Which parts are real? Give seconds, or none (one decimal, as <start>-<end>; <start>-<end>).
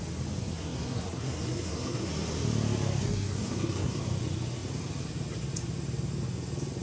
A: 0.0-0.4; 2.1-3.0; 4.0-6.8